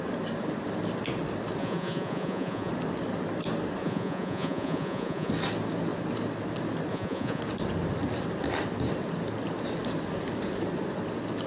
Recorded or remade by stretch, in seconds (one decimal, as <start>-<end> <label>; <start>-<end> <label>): 0.0-1.6 recorded; 1.6-2.7 remade; 2.7-3.8 recorded; 3.8-5.3 remade; 5.3-6.9 recorded; 6.9-7.4 remade; 7.4-11.5 recorded